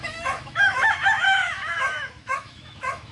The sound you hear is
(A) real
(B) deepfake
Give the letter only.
B